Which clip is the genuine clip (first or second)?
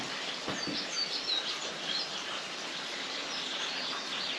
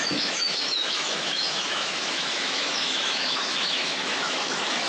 first